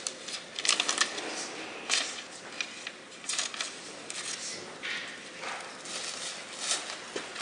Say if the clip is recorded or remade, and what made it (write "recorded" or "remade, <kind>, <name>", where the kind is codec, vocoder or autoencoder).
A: recorded